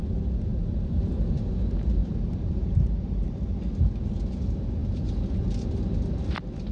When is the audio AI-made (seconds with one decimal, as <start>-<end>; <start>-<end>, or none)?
0.5-1.5; 2.0-3.5